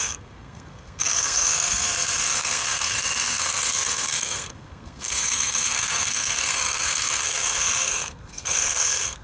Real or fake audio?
fake